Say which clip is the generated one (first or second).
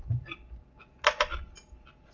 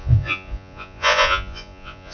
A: second